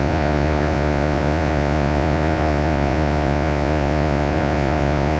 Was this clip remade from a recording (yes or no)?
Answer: yes